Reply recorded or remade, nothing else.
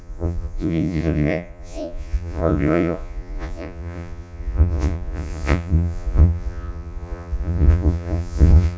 remade